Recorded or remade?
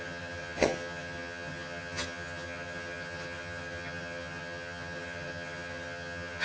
remade